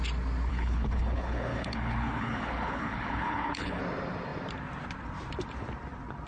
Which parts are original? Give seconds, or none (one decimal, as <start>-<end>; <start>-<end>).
0.0-0.5; 3.8-6.3